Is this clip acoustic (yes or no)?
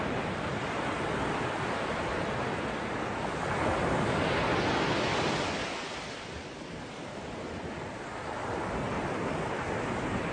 yes